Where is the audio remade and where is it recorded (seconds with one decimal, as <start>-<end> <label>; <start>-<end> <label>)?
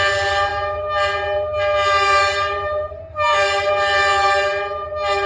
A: 0.0-5.3 recorded